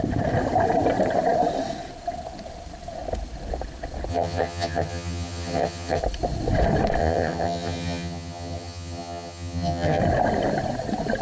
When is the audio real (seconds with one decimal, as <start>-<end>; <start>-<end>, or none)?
0.0-4.1; 6.0-7.0; 10.0-11.2